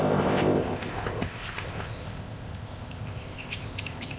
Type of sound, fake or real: fake